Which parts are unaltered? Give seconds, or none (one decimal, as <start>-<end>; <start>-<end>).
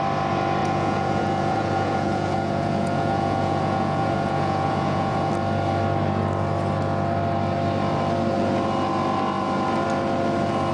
0.0-0.6; 5.3-10.7